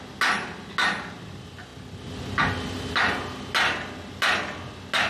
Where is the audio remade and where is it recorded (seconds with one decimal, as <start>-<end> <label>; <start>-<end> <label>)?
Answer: 0.0-5.1 recorded